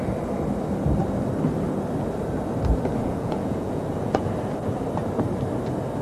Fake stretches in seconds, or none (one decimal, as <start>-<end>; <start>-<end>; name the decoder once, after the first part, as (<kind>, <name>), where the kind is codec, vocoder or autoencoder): 3.0-4.3 (vocoder, Vocos)